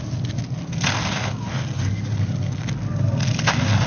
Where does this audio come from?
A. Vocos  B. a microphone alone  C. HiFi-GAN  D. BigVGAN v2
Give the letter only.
B